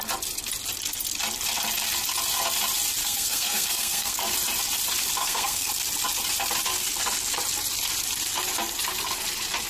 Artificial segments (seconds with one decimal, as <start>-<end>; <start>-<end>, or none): 3.0-4.2; 5.2-5.7